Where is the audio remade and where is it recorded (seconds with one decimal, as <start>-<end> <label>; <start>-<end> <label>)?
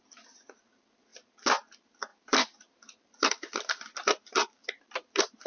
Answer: 0.0-1.1 remade; 1.1-1.7 recorded; 1.7-5.5 remade